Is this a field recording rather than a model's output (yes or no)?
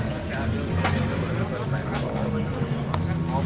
yes